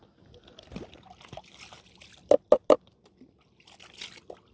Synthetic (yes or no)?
no